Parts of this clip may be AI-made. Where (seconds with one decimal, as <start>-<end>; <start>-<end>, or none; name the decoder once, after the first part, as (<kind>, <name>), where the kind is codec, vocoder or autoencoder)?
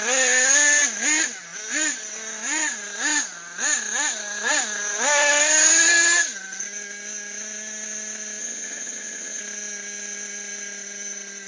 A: 8.4-9.4 (vocoder, HiFi-GAN)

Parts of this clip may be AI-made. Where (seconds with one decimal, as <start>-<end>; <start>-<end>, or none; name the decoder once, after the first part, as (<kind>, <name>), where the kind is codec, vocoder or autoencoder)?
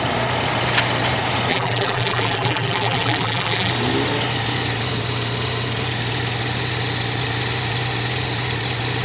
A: 1.5-3.7 (vocoder, BigVGAN v2)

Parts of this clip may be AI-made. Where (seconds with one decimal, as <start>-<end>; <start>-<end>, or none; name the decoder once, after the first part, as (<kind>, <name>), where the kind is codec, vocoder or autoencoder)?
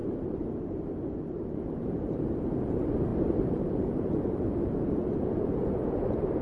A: 0.0-6.4 (vocoder, BigVGAN v2)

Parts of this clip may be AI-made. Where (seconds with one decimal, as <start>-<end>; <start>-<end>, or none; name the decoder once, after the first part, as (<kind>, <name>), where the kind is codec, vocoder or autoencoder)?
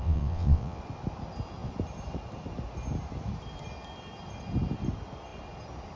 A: 0.0-0.8 (vocoder, WaveNeXt)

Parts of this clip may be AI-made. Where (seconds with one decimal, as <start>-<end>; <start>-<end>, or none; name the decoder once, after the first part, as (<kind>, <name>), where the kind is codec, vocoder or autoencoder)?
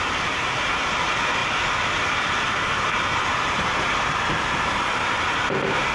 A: 0.0-5.9 (vocoder, BigVGAN v2)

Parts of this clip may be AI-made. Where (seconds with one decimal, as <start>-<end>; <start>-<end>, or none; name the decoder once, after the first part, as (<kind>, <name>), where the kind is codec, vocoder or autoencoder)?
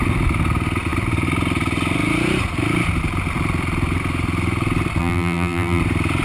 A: 5.0-5.8 (vocoder, BigVGAN v2)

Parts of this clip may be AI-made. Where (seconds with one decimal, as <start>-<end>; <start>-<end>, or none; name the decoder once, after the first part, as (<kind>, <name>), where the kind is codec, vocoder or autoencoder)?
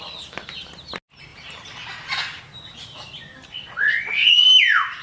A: 3.5-4.3 (vocoder, WaveNeXt)